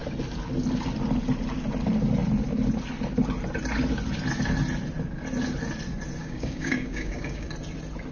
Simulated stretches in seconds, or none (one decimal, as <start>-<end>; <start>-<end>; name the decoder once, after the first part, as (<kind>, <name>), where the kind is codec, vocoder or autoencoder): 6.2-7.5 (codec, DAC)